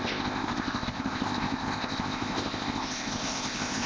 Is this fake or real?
fake